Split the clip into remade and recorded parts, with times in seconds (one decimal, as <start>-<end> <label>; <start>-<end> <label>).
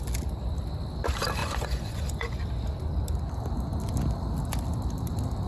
0.0-1.4 recorded; 1.4-2.4 remade; 2.4-5.5 recorded